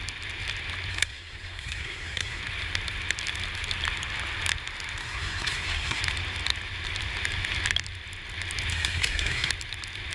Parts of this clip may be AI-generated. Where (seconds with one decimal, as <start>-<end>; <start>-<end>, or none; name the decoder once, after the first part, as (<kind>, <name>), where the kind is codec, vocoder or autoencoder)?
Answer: 0.9-2.4 (codec, SNAC); 5.0-6.0; 8.7-9.5